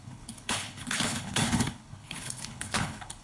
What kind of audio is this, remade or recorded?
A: remade